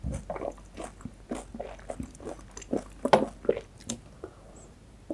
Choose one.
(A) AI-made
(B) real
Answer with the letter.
B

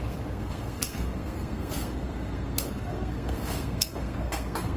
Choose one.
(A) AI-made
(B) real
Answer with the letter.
A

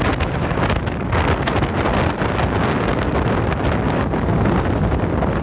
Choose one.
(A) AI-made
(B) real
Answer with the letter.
B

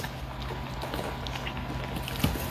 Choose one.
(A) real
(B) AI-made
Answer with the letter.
A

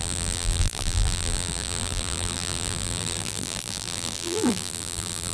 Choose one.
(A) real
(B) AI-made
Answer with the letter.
B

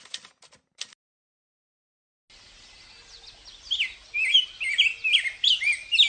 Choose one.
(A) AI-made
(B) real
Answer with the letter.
B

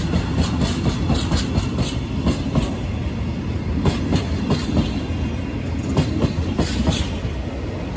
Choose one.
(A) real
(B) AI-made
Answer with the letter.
A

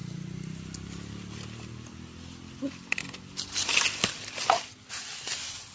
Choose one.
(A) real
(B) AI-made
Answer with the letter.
A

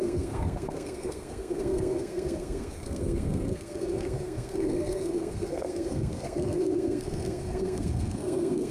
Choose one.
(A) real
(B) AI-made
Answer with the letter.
B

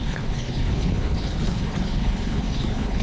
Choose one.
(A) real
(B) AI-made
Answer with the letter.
B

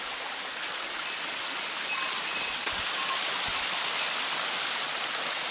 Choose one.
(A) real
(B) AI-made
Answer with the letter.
A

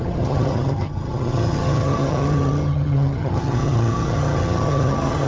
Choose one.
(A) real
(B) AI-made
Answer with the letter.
B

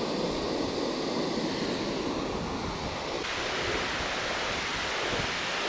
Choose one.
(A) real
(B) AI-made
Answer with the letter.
A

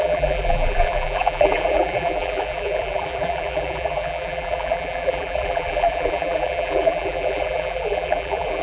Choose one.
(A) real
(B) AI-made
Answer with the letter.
B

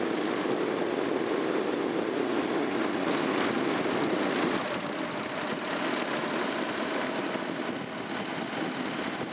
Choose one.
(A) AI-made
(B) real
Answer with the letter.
B